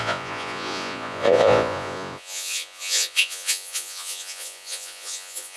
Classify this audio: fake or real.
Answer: fake